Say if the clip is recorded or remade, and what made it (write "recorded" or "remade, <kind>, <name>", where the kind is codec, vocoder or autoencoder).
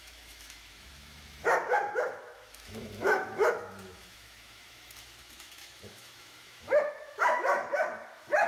remade, autoencoder, DAC-VAE